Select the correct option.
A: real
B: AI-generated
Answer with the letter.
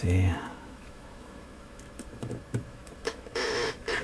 B